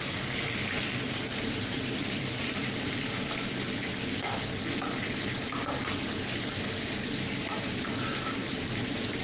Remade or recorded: recorded